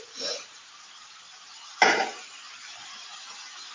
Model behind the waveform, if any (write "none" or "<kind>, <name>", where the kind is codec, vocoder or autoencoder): vocoder, BigVGAN v2